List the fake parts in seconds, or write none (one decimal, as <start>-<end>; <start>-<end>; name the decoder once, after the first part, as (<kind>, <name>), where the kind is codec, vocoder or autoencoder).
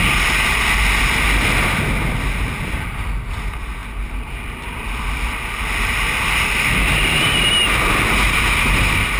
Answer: none